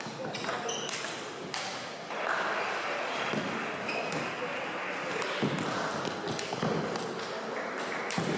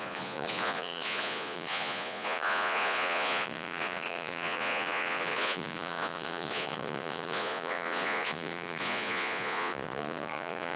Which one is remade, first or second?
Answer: second